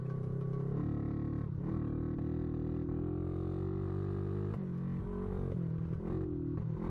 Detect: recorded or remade recorded